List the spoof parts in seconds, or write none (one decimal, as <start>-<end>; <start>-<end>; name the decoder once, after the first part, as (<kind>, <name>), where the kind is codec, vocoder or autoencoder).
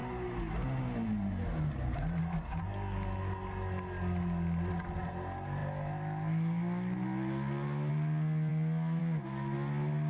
none